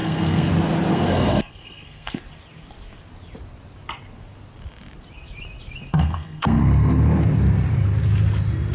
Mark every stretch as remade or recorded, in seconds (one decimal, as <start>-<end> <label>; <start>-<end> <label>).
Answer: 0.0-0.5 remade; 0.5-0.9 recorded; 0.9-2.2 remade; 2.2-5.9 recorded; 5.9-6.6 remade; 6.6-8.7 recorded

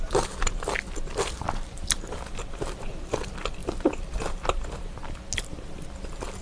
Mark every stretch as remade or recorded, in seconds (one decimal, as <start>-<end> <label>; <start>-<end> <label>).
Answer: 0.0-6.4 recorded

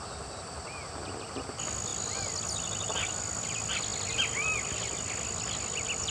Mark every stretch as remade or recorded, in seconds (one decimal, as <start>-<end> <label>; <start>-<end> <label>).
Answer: 0.0-6.1 recorded

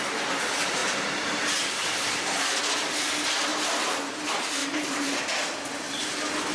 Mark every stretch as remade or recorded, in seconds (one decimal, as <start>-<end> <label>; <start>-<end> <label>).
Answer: 0.0-0.8 recorded; 0.8-2.6 remade; 2.6-4.6 recorded; 4.6-5.2 remade; 5.2-6.5 recorded

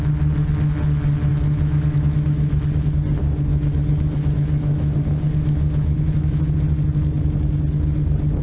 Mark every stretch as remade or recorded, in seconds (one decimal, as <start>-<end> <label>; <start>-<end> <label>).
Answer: 0.0-1.3 recorded; 1.3-2.5 remade; 2.5-3.5 recorded; 3.5-6.1 remade; 6.1-8.4 recorded

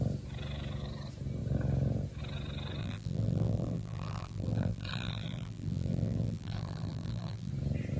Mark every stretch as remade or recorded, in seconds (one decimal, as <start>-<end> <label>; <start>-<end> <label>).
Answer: 0.0-2.8 recorded; 2.8-7.5 remade; 7.5-8.0 recorded